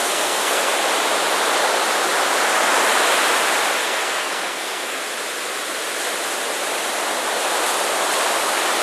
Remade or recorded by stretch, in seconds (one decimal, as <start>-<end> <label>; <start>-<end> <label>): 0.0-0.7 remade; 0.7-3.8 recorded; 3.8-5.0 remade; 5.0-8.8 recorded